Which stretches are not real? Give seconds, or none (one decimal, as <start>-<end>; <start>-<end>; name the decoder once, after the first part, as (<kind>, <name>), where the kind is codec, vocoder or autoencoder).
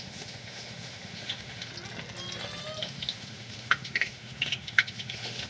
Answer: 0.0-1.7 (autoencoder, DAC-VAE); 2.8-5.5